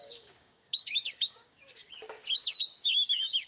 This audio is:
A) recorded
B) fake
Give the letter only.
B